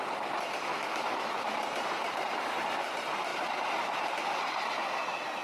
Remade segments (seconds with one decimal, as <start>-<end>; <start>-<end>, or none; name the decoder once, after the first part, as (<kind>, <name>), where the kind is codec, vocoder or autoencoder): 0.7-1.6 (autoencoder, DAC-VAE)